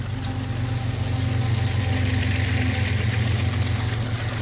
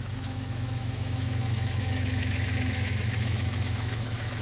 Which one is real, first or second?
first